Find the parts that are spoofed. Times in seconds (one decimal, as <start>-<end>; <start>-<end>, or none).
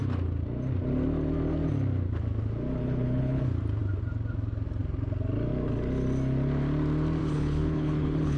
2.8-3.4; 7.2-8.4